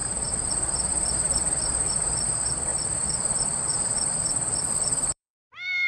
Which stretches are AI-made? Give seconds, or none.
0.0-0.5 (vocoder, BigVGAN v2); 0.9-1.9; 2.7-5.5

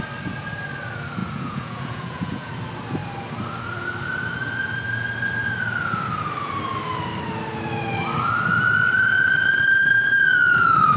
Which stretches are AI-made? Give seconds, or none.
1.2-2.5 (vocoder, Vocos)

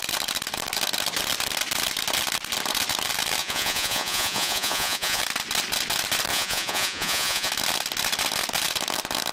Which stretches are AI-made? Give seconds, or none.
3.4-5.2 (vocoder, Vocos); 6.3-7.5

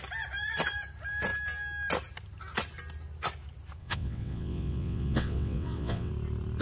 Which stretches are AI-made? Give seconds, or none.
3.8-6.1 (vocoder, WaveNeXt)